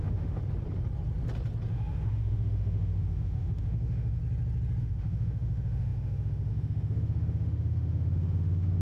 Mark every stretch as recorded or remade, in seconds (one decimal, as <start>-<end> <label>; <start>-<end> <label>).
0.0-0.4 remade; 0.4-1.7 recorded; 1.7-4.2 remade; 4.2-4.8 recorded; 4.8-8.8 remade